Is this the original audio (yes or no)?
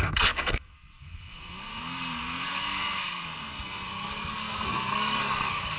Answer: no